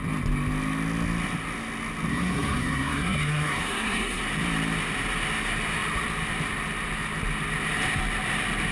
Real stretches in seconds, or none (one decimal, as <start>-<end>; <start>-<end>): 0.0-2.1; 4.2-8.7